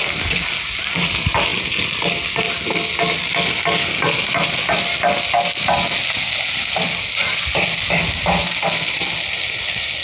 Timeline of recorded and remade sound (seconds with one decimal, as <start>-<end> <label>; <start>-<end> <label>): 0.0-10.0 recorded